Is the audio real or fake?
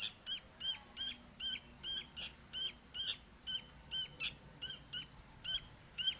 real